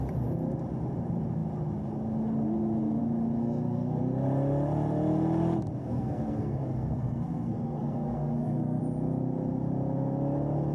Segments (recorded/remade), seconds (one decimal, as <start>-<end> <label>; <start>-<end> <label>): 0.0-3.4 recorded; 3.4-4.0 remade; 4.0-5.8 recorded; 5.8-8.8 remade; 8.8-10.7 recorded